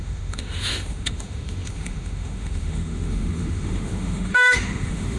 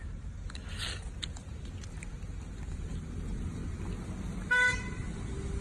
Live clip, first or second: second